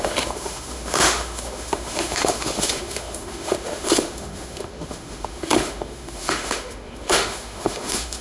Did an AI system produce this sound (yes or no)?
yes